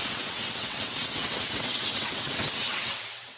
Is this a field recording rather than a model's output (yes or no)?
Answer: no